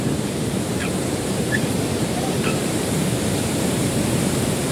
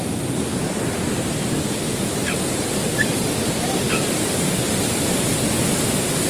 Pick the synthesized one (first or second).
first